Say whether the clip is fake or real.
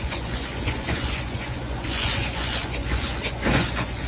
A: fake